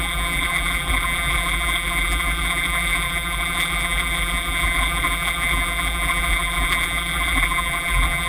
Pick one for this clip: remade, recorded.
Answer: remade